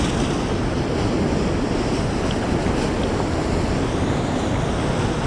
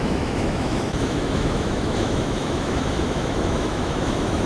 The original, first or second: first